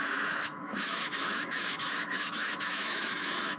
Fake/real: fake